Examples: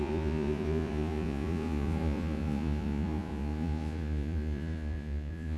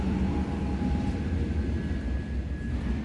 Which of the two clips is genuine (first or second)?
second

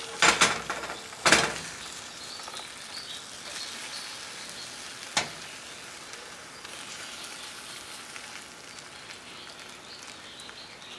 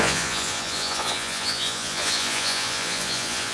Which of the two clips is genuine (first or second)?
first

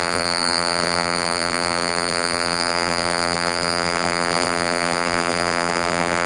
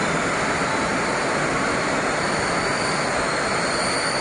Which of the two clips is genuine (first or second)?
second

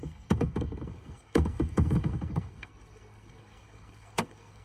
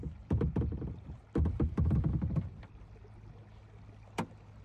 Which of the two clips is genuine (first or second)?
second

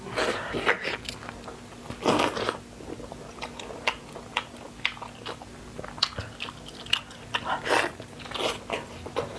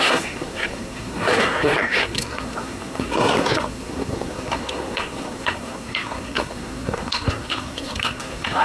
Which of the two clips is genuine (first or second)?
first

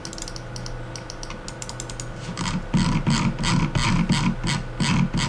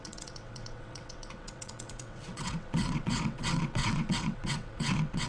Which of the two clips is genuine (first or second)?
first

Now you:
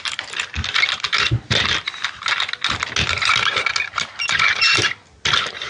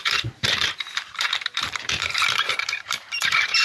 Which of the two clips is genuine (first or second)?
first